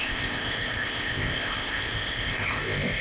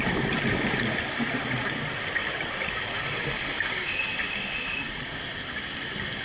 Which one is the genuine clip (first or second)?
second